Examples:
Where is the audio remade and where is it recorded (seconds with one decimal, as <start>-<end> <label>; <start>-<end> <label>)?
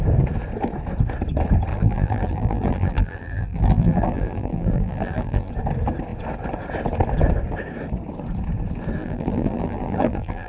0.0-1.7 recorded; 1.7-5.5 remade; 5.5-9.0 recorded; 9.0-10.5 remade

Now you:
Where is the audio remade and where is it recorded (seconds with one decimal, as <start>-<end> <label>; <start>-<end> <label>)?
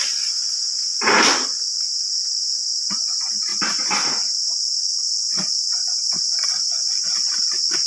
0.0-4.9 recorded; 4.9-7.5 remade; 7.5-7.9 recorded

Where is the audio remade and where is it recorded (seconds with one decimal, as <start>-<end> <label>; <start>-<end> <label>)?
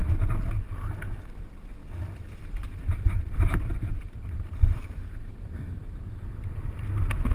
0.0-1.8 recorded; 1.8-5.7 remade; 5.7-7.3 recorded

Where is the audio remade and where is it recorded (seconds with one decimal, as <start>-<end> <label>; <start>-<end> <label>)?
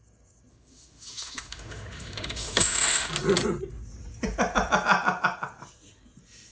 0.0-0.5 recorded; 0.5-3.1 remade; 3.1-6.5 recorded